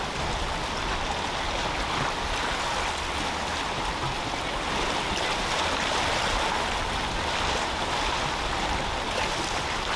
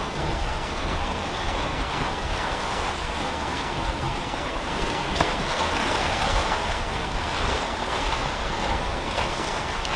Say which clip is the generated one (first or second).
second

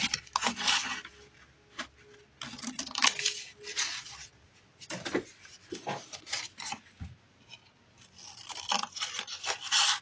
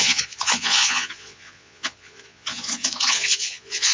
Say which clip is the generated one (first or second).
second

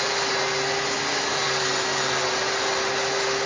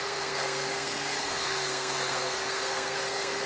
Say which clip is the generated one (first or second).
second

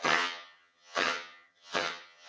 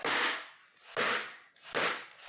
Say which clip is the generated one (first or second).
first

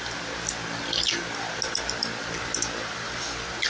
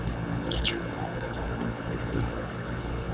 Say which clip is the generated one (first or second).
second